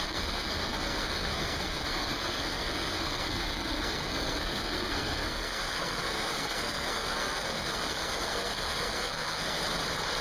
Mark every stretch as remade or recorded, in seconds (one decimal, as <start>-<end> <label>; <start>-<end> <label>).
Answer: 0.0-9.6 remade; 9.6-10.2 recorded

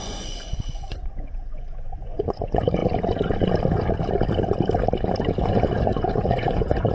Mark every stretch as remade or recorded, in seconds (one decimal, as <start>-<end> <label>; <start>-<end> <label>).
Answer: 0.0-2.8 remade; 2.8-5.4 recorded; 5.4-6.9 remade

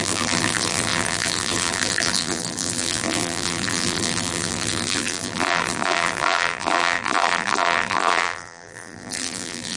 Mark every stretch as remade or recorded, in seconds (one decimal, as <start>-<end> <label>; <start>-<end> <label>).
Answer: 0.0-9.8 remade

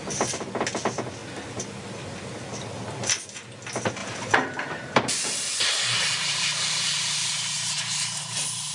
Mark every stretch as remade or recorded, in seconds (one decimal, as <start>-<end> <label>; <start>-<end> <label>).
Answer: 0.0-4.0 recorded; 4.0-7.3 remade; 7.3-8.7 recorded

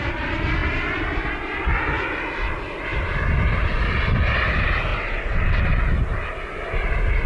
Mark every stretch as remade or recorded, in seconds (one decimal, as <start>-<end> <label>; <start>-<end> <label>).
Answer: 0.0-4.9 recorded; 4.9-5.6 remade; 5.6-7.3 recorded

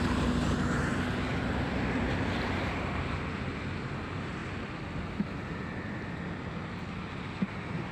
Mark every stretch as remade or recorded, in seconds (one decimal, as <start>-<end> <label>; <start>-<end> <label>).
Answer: 0.0-1.3 recorded; 1.3-3.2 remade; 3.2-7.9 recorded